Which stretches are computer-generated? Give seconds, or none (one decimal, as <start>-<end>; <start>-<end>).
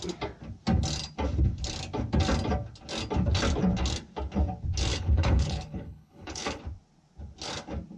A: 4.9-6.6